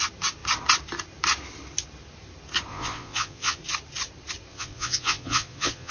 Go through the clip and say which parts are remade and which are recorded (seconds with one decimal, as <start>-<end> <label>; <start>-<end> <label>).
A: 0.0-2.7 recorded; 2.7-3.6 remade; 3.6-4.5 recorded; 4.5-5.9 remade